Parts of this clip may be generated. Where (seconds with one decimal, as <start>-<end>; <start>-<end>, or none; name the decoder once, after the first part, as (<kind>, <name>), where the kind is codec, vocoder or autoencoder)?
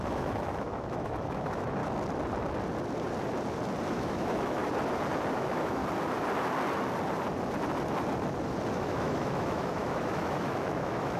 0.0-1.8 (autoencoder, DAC-VAE); 3.9-4.6; 5.3-5.8; 8.7-11.2